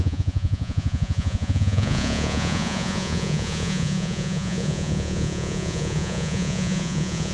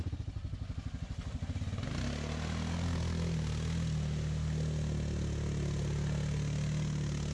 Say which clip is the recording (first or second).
second